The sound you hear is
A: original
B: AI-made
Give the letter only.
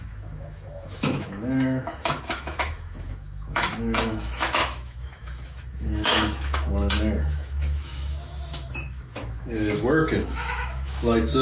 B